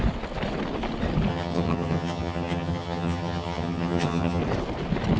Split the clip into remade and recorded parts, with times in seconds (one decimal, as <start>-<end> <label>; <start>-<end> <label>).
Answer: 0.0-1.3 recorded; 1.3-4.4 remade; 4.4-5.2 recorded